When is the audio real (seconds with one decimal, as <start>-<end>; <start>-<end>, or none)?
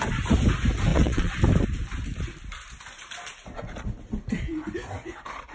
0.0-0.9; 1.4-5.5